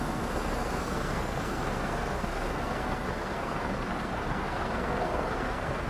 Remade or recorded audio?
remade